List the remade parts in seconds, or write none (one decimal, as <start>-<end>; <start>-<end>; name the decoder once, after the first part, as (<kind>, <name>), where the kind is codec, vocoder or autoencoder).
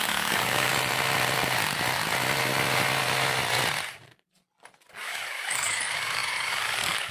0.0-0.7 (codec, DAC); 5.0-7.1